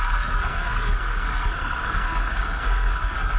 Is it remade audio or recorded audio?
remade